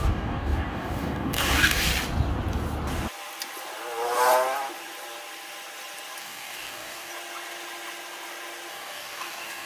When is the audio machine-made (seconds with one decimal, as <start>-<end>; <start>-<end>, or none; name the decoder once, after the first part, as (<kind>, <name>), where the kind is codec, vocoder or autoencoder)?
0.0-1.9 (codec, DAC); 6.2-7.1; 8.7-9.7